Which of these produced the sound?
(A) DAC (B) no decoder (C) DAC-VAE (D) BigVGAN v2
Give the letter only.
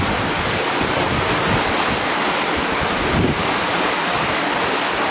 B